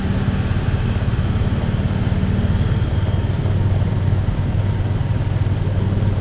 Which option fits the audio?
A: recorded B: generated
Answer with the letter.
A